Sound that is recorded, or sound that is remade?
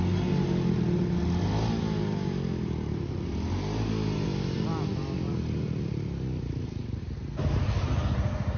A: recorded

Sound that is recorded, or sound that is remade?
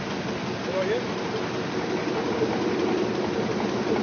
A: recorded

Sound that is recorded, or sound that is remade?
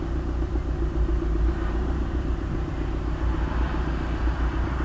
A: recorded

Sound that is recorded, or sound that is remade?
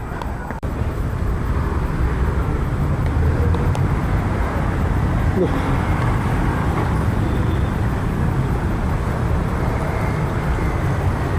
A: remade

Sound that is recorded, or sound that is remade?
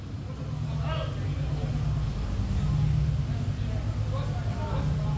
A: recorded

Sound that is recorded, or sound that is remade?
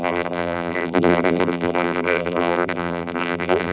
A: remade